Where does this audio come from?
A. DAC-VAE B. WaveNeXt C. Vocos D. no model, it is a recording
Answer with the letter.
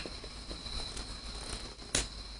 D